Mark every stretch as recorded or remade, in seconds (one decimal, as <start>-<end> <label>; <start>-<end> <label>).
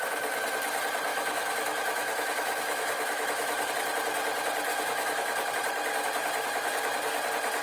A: 0.0-1.1 recorded; 1.1-3.7 remade; 3.7-4.7 recorded; 4.7-5.5 remade; 5.5-7.6 recorded